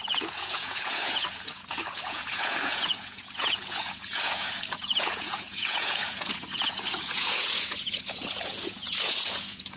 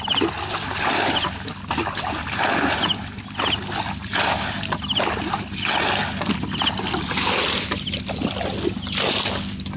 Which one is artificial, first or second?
first